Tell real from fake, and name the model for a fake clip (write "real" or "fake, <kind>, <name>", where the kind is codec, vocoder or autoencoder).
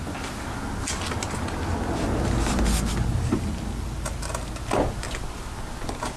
real